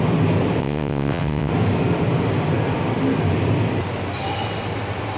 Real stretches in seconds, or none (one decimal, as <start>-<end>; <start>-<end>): 0.0-0.6; 1.5-5.2